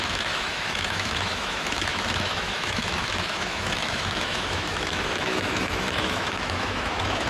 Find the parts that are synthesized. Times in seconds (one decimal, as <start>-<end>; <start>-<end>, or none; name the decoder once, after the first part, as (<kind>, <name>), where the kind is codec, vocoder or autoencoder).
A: 0.0-7.3 (autoencoder, DAC-VAE)